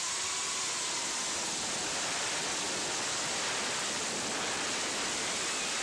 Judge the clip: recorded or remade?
recorded